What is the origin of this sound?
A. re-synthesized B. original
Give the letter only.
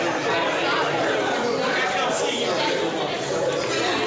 B